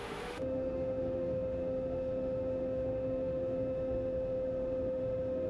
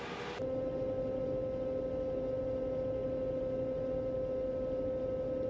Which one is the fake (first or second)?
first